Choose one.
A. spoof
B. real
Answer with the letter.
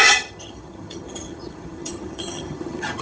A